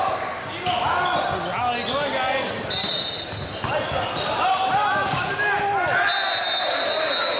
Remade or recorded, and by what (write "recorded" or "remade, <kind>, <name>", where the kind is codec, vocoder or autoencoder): recorded